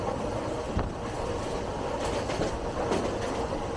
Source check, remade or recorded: recorded